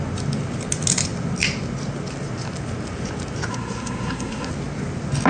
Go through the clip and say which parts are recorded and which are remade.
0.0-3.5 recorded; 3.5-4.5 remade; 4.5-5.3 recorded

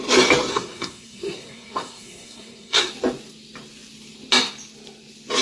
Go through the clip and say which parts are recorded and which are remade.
0.0-0.5 recorded; 0.5-2.9 remade; 2.9-5.4 recorded

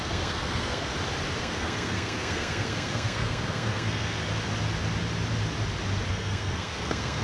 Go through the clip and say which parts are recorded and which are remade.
0.0-0.9 remade; 0.9-1.4 recorded; 1.4-4.2 remade; 4.2-6.1 recorded; 6.1-7.2 remade

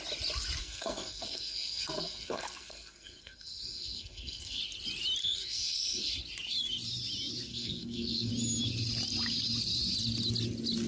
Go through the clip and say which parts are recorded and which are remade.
0.0-0.6 recorded; 0.6-4.6 remade; 4.6-5.2 recorded; 5.2-6.1 remade; 6.1-7.5 recorded; 7.5-8.3 remade; 8.3-10.9 recorded

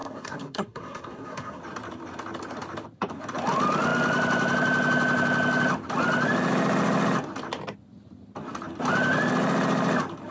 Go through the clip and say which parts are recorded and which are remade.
0.0-1.6 remade; 1.6-10.3 recorded

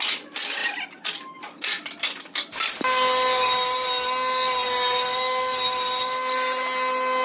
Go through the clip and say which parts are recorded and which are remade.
0.0-7.2 recorded

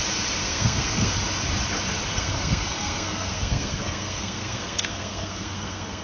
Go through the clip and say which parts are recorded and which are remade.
0.0-0.4 recorded; 0.4-1.2 remade; 1.2-2.1 recorded; 2.1-6.0 remade